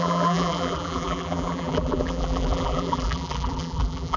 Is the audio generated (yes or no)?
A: yes